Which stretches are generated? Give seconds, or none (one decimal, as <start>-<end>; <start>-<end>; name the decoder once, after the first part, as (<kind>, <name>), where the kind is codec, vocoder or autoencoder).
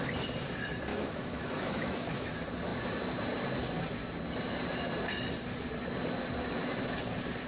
0.9-2.3 (autoencoder, DAC-VAE)